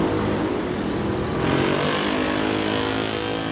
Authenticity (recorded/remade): recorded